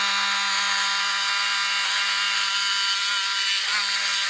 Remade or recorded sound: recorded